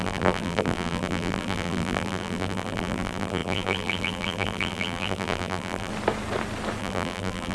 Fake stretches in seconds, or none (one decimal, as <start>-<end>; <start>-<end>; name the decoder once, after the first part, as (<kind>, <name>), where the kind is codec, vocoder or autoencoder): 0.0-5.9 (vocoder, BigVGAN v2); 6.8-7.5